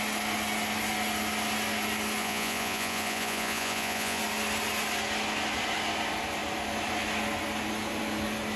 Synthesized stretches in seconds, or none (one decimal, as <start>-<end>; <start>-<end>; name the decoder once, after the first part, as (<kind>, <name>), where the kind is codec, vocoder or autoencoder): 2.2-4.2 (vocoder, Vocos)